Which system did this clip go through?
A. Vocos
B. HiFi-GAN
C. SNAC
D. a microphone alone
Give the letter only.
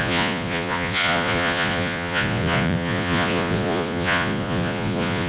A